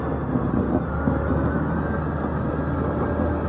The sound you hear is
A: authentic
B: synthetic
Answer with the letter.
A